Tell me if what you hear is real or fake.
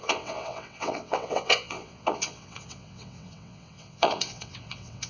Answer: fake